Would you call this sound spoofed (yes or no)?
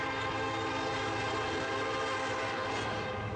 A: no